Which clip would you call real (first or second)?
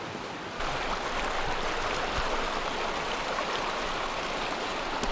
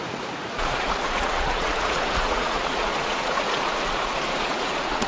first